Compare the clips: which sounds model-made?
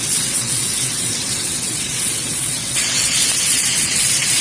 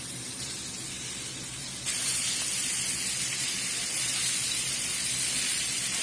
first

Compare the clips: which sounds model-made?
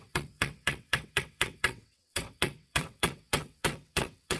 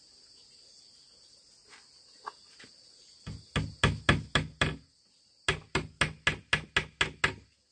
first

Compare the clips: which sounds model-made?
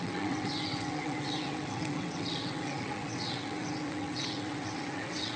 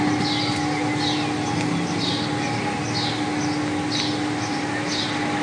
first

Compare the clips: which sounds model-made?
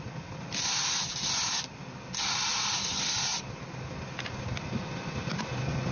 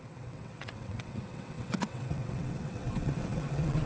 second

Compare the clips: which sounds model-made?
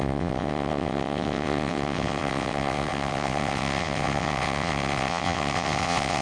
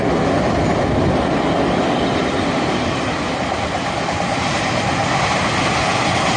first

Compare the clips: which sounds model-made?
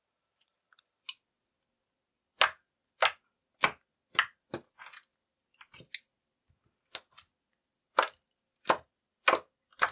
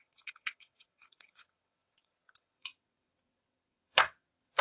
second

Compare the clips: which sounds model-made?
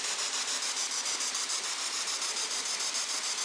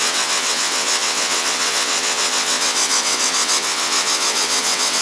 second